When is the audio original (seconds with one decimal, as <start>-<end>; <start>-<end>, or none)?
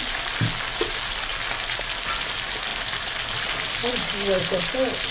0.0-2.7; 3.2-3.8; 4.6-5.1